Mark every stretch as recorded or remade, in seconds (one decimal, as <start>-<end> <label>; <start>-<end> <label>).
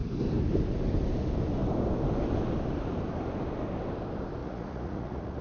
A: 0.0-4.4 recorded; 4.4-5.4 remade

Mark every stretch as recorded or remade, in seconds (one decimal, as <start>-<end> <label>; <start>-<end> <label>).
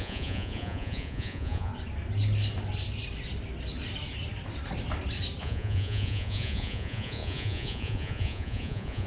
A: 0.0-1.7 remade; 1.7-5.4 recorded; 5.4-9.1 remade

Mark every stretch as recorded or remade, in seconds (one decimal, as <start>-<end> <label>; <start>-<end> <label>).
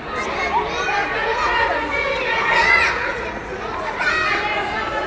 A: 0.0-1.0 recorded; 1.0-4.1 remade; 4.1-5.1 recorded